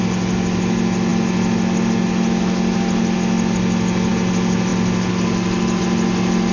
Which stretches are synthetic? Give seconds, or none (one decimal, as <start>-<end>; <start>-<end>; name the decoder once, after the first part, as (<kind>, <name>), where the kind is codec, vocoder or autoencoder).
none